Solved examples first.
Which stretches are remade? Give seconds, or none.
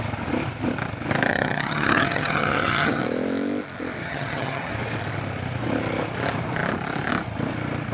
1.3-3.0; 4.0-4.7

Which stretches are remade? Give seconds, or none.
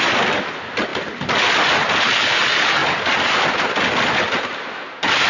none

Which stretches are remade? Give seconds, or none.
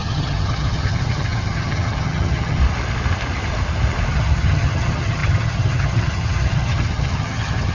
0.0-2.6; 4.1-7.7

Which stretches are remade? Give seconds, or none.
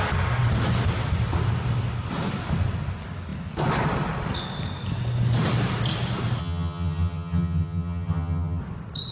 6.4-8.6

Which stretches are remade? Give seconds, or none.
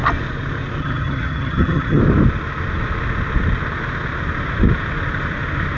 0.8-2.0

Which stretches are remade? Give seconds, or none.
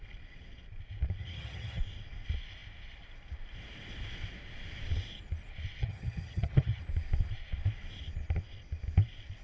1.2-1.8; 5.8-6.8